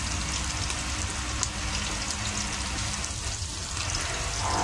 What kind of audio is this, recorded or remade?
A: recorded